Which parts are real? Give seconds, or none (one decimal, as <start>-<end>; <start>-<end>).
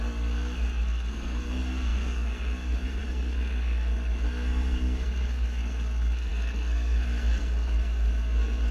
none